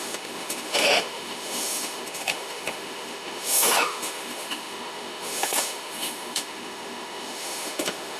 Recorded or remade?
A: remade